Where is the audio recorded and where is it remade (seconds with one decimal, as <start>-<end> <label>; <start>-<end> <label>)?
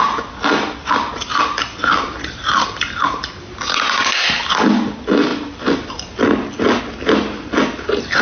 0.0-8.2 recorded